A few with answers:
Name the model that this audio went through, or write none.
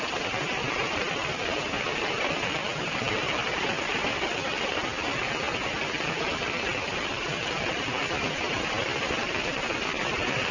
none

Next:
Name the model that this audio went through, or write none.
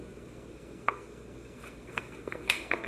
codec, SNAC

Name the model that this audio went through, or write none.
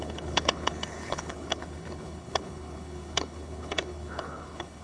codec, HILCodec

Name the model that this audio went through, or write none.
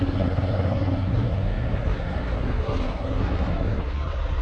codec, SNAC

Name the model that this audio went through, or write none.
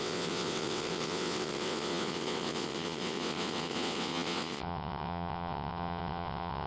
vocoder, WaveNeXt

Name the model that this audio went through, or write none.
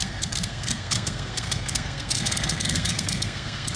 codec, SNAC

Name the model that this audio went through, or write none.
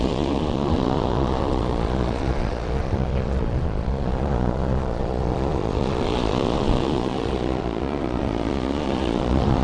vocoder, Vocos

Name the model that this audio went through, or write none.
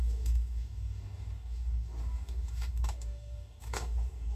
codec, DAC